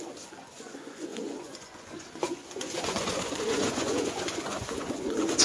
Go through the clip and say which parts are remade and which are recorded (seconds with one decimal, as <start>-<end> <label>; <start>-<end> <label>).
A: 0.0-5.4 remade